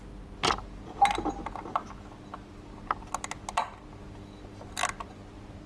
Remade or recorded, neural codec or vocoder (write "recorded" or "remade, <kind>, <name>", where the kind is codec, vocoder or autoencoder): recorded